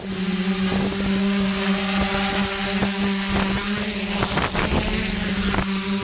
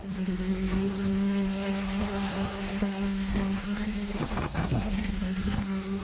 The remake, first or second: second